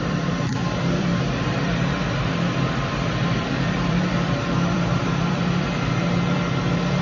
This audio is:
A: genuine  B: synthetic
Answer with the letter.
B